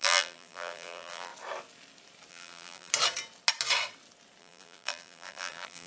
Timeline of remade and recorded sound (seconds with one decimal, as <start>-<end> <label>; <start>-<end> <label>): 0.0-1.3 remade; 1.3-2.3 recorded; 2.3-2.9 remade; 2.9-4.4 recorded; 4.4-5.9 remade